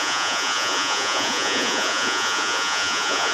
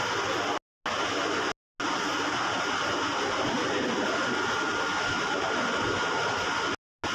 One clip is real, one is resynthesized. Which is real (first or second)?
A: second